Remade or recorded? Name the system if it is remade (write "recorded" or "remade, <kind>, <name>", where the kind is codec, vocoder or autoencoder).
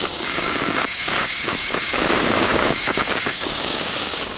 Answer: remade, codec, DAC